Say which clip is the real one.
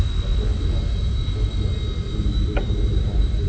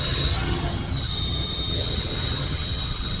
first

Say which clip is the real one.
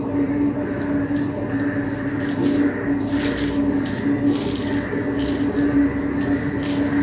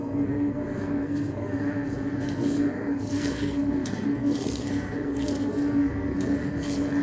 first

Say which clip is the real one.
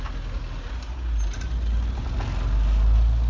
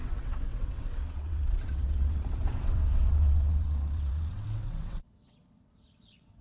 first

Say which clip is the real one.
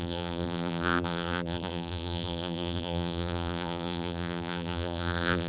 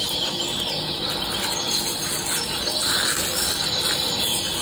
second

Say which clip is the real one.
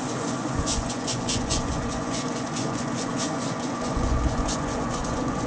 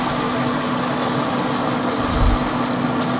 second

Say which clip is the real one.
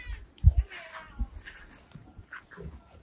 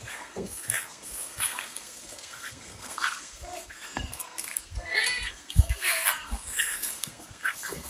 first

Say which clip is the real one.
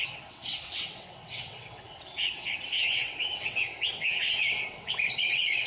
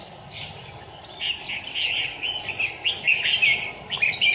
second